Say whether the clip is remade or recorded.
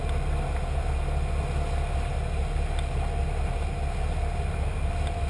recorded